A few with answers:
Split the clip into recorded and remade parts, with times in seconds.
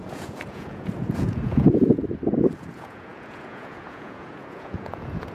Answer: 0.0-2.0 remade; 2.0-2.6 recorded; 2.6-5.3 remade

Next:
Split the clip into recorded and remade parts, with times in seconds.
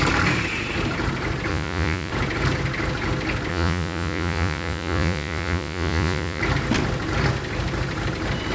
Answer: 0.0-1.5 recorded; 1.5-2.1 remade; 2.1-3.5 recorded; 3.5-6.4 remade; 6.4-8.5 recorded